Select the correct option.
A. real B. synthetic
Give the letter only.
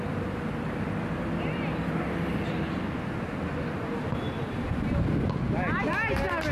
A